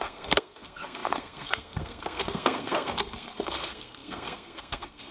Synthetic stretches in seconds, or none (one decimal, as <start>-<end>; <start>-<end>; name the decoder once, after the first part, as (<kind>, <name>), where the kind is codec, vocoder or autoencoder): 0.0-5.1 (codec, SNAC)